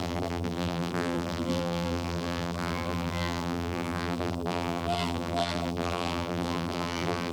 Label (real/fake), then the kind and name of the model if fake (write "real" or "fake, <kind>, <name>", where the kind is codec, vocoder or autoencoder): fake, vocoder, BigVGAN v2